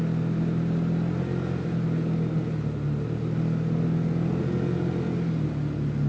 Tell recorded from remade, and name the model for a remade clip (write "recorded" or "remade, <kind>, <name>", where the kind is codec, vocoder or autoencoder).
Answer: recorded